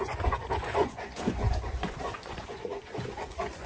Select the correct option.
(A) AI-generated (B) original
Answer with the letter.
A